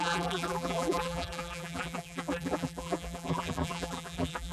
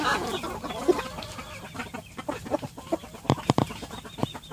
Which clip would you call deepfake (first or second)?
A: first